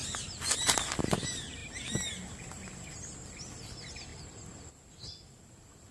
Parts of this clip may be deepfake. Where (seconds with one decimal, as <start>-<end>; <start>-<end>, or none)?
0.0-4.1; 4.7-5.9